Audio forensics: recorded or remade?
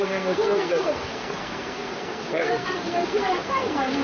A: remade